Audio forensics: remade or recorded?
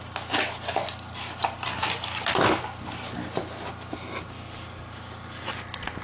recorded